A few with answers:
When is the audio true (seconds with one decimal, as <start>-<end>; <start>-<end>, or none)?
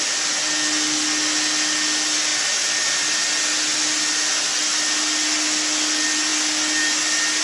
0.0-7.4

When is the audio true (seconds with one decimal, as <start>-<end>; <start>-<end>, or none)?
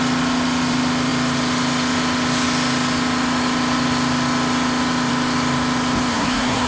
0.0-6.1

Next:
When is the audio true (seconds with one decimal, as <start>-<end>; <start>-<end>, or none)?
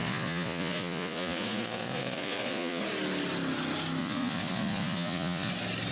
2.8-4.0; 5.5-5.9